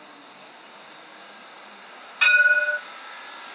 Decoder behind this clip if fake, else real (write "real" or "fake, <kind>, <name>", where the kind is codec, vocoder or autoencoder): real